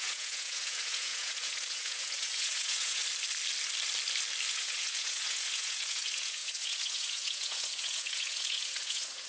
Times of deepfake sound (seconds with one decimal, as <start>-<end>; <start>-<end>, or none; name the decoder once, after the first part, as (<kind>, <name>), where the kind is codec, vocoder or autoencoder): 0.0-3.0 (vocoder, Vocos); 4.5-9.3